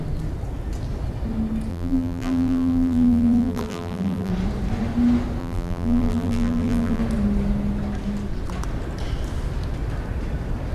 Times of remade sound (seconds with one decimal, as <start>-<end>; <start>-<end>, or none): 1.7-4.3; 5.4-7.0